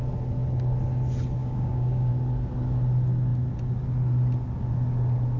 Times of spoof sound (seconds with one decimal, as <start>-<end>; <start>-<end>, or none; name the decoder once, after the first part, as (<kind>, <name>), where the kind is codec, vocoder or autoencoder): 1.4-2.1 (codec, DAC)

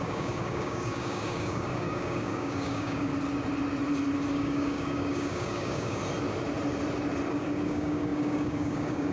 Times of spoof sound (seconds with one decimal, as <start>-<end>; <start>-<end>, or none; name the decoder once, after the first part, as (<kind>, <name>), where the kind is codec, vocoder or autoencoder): 0.0-3.1 (codec, DAC); 4.3-6.0; 7.3-9.1

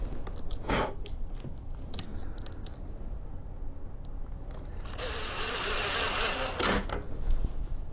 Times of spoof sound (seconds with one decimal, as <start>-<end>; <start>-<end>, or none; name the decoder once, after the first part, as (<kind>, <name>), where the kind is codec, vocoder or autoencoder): none

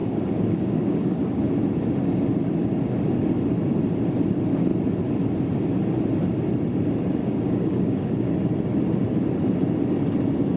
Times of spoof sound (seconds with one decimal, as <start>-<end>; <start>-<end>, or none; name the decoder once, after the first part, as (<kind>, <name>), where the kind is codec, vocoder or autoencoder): 0.0-1.5 (codec, DAC); 7.2-8.3

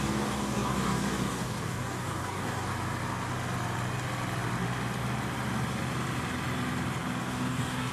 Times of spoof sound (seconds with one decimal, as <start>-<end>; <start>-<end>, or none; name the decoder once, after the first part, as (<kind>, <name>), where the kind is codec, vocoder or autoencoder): 0.0-2.7 (codec, DAC); 7.2-7.9